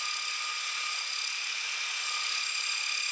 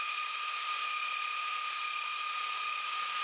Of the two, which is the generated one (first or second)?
second